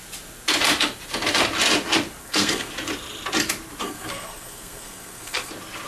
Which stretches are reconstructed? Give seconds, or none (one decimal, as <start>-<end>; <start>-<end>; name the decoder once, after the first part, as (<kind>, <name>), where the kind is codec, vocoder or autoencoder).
2.2-2.7 (codec, SNAC); 3.8-5.5